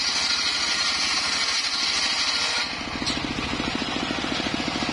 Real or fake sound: real